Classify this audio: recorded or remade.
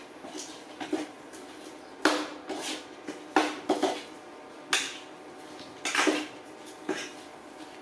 recorded